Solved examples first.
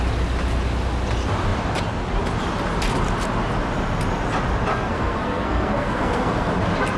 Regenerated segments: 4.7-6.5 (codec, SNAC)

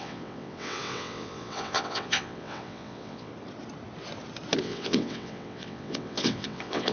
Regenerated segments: 0.0-3.3 (vocoder, WaveNeXt); 4.6-6.9

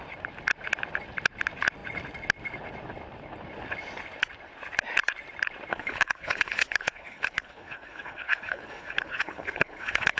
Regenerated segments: 5.7-10.2 (codec, HILCodec)

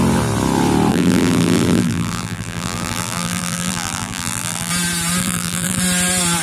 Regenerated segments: 0.9-4.7 (vocoder, BigVGAN v2); 5.2-5.8

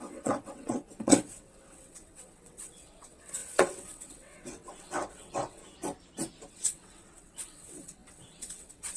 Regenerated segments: 0.0-5.6 (vocoder, WaveNeXt); 6.5-9.0

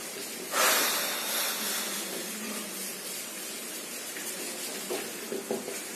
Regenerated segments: 2.2-4.4 (vocoder, BigVGAN v2)

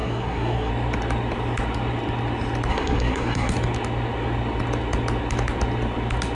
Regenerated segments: 0.0-0.7 (codec, SNAC); 2.7-3.5

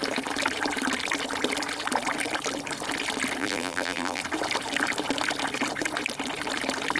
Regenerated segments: 3.4-4.2 (vocoder, BigVGAN v2)